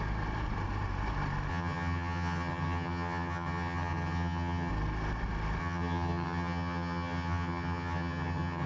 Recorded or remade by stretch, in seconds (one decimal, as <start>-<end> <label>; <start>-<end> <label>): 0.0-1.5 recorded; 1.5-4.7 remade; 4.7-5.6 recorded; 5.6-8.7 remade